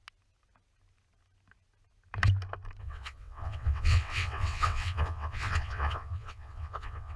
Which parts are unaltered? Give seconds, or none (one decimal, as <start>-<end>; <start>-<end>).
0.0-2.8